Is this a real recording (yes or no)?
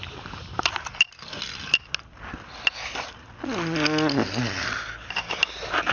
yes